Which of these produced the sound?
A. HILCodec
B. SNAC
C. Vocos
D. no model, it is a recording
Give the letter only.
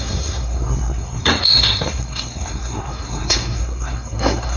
B